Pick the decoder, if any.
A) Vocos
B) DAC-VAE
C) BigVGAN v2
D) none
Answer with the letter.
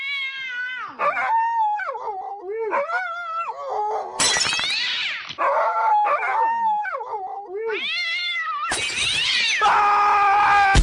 D